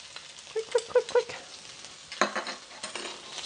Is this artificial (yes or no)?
no